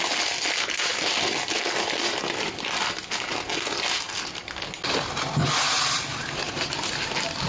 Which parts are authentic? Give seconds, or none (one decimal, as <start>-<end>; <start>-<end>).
0.0-5.4; 7.0-7.5